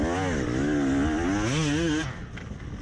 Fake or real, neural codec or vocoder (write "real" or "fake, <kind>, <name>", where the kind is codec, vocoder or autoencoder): real